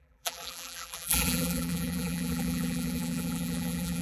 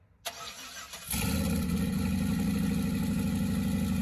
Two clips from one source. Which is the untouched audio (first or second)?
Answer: second